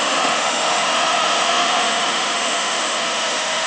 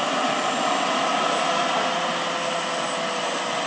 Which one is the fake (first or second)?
first